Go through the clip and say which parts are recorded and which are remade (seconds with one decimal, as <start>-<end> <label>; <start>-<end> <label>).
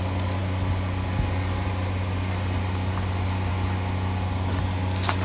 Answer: 0.0-5.2 recorded